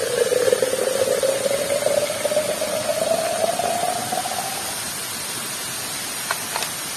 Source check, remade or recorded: recorded